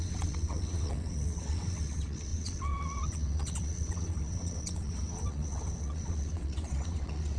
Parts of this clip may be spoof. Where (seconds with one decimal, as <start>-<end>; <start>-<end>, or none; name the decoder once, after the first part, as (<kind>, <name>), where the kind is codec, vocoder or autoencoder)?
0.0-7.4 (vocoder, WaveNeXt)